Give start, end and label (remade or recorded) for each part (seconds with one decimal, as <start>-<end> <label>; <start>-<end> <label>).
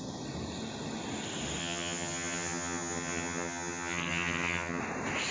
0.0-1.6 recorded; 1.6-4.8 remade; 4.8-5.3 recorded